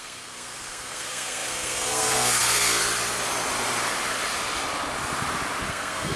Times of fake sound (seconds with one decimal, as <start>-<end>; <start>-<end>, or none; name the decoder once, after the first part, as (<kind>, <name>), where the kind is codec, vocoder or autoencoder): 0.0-2.8 (codec, SNAC); 5.7-6.2